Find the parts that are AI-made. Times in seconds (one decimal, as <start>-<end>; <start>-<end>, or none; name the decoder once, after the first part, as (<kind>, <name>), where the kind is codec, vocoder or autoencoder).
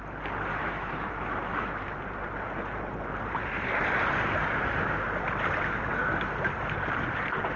0.5-2.0 (autoencoder, DAC-VAE)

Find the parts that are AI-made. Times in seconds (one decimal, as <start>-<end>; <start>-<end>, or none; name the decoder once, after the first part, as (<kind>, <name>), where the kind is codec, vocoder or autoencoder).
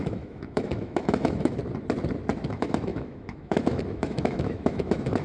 0.0-1.6 (autoencoder, DAC-VAE); 2.5-5.2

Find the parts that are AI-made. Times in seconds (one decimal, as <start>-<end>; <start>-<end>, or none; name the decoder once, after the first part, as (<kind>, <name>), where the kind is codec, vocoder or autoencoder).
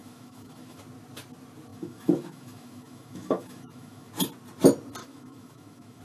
0.0-0.8 (autoencoder, DAC-VAE); 1.7-4.1; 5.0-6.0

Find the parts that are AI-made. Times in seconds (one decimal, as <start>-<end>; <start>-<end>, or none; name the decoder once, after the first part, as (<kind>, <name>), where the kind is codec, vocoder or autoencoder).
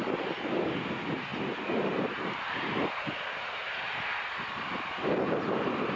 none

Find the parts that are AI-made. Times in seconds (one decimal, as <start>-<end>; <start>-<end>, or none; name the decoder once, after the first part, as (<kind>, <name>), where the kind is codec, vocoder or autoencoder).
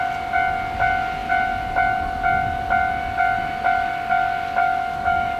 4.6-5.4 (autoencoder, DAC-VAE)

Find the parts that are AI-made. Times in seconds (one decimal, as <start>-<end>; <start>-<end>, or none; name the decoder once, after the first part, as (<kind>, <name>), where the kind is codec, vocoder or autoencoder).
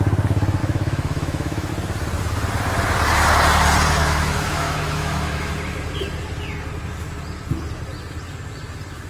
0.6-1.7 (autoencoder, DAC-VAE); 4.0-5.5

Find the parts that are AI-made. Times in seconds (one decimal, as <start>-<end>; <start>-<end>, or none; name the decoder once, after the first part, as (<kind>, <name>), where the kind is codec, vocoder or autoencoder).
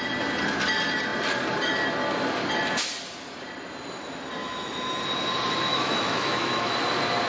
4.4-5.0 (autoencoder, DAC-VAE); 5.7-6.7